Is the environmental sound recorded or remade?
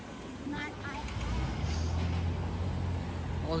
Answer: recorded